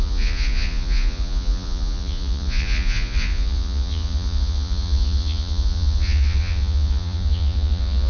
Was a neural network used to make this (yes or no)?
yes